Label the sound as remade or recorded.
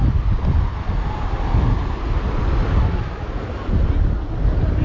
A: recorded